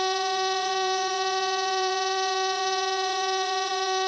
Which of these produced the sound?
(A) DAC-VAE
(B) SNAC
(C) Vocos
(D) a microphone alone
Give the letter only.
C